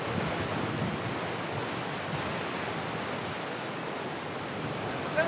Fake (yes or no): no